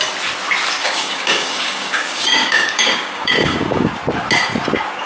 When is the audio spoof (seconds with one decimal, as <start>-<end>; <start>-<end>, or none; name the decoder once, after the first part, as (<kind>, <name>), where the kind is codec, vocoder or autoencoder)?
0.8-3.9 (codec, DAC)